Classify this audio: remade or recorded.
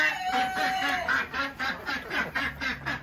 recorded